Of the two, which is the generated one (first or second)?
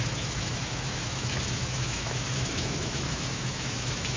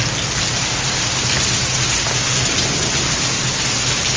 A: first